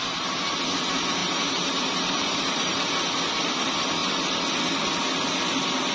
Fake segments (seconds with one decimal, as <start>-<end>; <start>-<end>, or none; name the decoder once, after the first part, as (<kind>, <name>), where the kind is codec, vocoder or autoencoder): 1.2-2.9 (vocoder, BigVGAN v2)

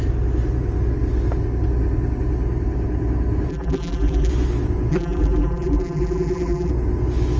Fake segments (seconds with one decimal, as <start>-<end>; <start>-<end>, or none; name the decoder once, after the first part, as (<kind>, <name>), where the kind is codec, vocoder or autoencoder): 3.5-4.3 (vocoder, BigVGAN v2); 4.9-6.7

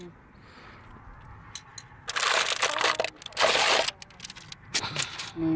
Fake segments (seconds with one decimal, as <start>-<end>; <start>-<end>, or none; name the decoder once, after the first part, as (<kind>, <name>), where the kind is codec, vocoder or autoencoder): none

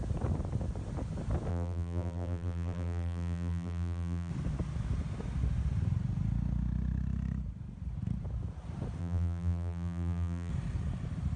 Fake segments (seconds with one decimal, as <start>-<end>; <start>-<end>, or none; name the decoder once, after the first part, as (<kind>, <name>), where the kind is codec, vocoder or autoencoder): 1.5-4.3 (vocoder, BigVGAN v2); 9.0-10.5

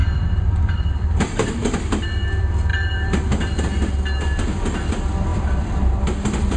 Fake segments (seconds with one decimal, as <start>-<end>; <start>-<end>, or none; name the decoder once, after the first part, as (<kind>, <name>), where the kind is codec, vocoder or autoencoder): 0.0-1.5 (vocoder, BigVGAN v2); 2.7-3.6; 5.3-6.0

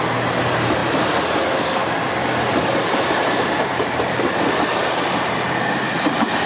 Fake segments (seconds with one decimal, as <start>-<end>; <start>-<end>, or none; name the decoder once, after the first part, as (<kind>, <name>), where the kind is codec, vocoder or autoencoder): 0.0-0.8 (vocoder, BigVGAN v2); 2.8-6.5

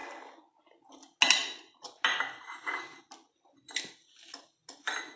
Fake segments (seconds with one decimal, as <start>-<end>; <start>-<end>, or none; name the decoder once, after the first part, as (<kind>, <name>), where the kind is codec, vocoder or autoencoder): none

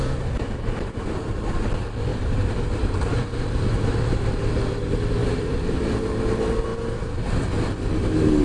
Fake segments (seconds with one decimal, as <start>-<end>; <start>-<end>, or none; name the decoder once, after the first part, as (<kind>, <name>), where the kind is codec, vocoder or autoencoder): 2.1-4.7 (vocoder, BigVGAN v2); 5.2-5.9